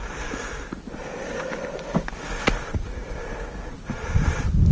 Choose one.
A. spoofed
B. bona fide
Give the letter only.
B